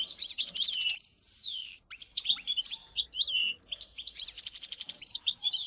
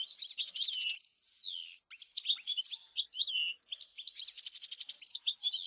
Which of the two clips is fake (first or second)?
first